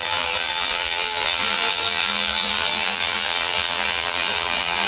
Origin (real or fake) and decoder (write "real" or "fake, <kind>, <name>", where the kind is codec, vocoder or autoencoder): fake, vocoder, BigVGAN v2